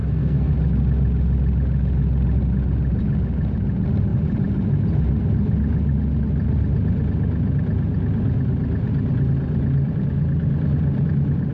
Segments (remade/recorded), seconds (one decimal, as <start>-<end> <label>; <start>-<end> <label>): 0.0-0.5 remade; 0.5-11.5 recorded